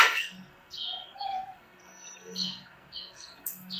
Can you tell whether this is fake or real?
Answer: fake